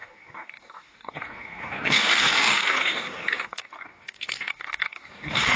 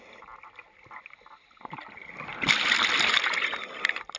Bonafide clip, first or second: second